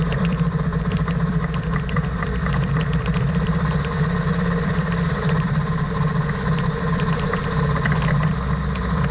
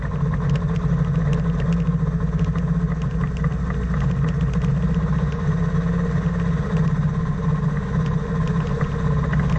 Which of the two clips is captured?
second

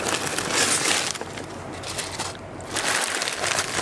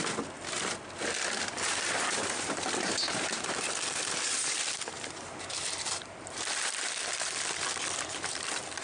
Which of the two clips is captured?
first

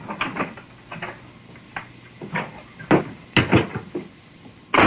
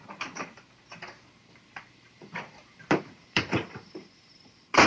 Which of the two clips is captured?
first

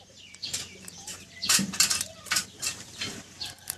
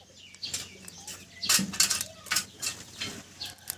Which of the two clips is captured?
second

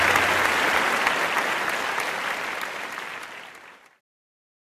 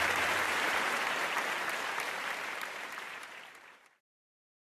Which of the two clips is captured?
first